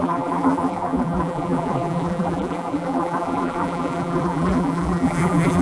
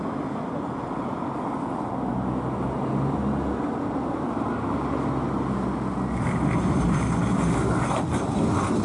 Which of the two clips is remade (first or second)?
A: first